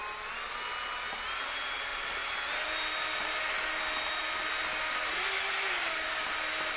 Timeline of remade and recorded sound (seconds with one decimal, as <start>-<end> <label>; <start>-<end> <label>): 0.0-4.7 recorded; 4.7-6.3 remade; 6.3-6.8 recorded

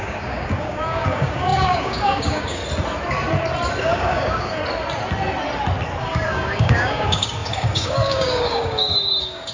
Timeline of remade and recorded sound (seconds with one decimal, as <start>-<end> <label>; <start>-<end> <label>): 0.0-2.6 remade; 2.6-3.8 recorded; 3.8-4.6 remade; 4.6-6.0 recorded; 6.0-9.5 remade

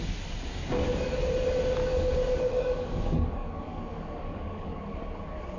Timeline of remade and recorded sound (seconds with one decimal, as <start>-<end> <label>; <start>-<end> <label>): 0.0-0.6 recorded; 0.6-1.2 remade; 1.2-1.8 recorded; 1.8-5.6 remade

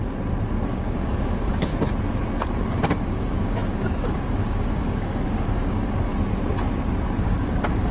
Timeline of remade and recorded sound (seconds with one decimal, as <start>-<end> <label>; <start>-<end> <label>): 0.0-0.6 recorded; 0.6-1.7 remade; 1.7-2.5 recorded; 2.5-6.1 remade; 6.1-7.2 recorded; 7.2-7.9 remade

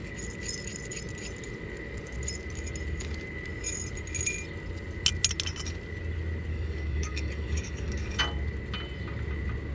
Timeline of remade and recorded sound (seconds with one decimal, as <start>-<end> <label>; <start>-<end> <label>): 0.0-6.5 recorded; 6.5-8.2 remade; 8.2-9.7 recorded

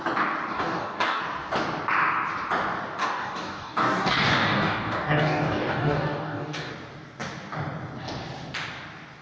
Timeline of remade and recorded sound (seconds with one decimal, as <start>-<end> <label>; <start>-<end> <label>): 0.0-0.5 recorded; 0.5-1.2 remade; 1.2-3.0 recorded; 3.0-6.7 remade; 6.7-9.2 recorded